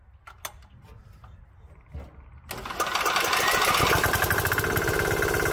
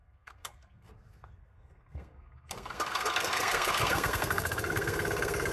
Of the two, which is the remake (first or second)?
second